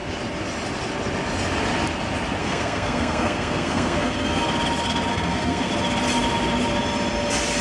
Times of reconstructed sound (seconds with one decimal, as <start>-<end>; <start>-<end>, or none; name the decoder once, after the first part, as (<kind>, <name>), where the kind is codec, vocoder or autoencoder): 2.4-4.5 (codec, SNAC); 5.1-5.7